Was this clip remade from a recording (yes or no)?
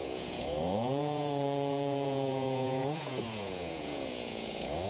yes